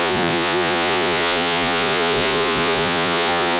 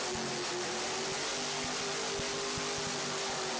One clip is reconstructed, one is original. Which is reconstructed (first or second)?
first